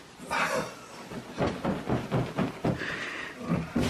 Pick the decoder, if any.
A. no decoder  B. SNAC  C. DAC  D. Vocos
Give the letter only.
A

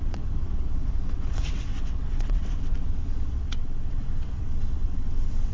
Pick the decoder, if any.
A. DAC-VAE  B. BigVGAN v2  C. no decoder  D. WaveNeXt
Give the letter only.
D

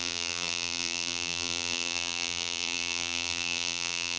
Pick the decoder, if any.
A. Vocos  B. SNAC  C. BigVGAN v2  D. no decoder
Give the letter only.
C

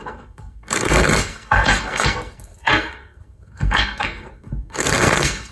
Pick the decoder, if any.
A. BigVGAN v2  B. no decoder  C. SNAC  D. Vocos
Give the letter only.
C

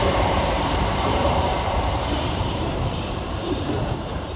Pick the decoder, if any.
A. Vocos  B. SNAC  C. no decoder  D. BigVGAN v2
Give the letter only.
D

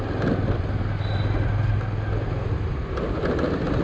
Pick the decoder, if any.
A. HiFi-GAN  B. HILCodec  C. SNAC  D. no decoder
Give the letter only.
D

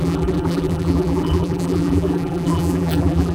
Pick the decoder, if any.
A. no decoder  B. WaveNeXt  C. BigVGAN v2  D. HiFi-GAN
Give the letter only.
C